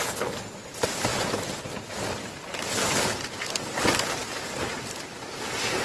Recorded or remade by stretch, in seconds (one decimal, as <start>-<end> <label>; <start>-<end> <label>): 0.0-1.1 remade; 1.1-3.8 recorded; 3.8-4.2 remade; 4.2-4.8 recorded; 4.8-5.8 remade